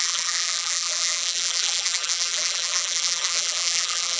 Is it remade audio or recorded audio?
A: remade